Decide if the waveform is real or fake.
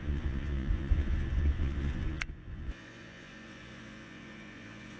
fake